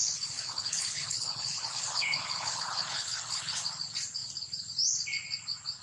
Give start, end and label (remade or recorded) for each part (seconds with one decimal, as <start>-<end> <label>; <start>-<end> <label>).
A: 0.0-3.5 remade; 3.5-5.8 recorded